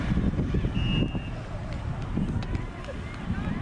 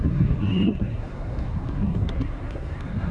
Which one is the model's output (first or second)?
second